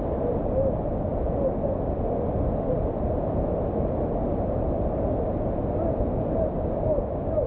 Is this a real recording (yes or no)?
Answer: yes